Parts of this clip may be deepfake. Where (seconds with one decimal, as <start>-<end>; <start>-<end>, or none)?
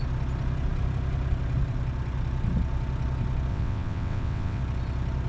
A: 3.5-4.6